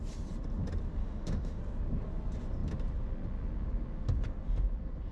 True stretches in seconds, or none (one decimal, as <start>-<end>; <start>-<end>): 0.0-1.0; 1.6-5.1